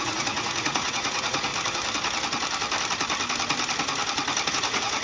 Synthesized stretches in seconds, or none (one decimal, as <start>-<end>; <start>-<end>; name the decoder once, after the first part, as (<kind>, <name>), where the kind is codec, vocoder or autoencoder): 0.0-1.5 (vocoder, Vocos); 4.5-5.0